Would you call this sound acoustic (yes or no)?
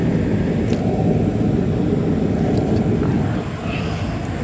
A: yes